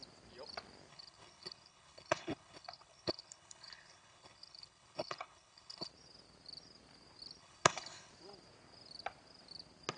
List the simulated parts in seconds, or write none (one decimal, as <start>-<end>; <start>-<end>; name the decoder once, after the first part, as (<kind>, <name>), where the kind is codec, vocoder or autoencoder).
0.9-5.9 (codec, HILCodec); 7.4-8.1